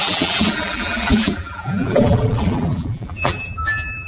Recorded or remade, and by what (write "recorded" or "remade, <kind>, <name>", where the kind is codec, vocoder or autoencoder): remade, vocoder, BigVGAN v2